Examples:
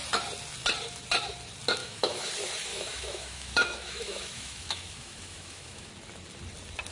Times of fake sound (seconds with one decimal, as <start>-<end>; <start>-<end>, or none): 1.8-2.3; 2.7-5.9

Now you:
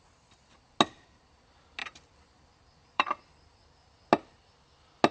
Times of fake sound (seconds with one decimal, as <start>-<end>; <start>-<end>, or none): 1.8-3.2

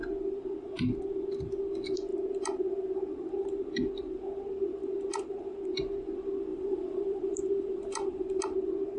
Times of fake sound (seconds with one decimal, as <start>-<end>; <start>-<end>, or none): 6.5-8.4